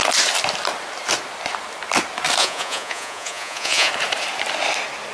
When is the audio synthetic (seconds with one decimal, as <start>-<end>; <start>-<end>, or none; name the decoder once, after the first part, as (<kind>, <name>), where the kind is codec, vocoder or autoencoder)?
2.4-3.9 (vocoder, Vocos)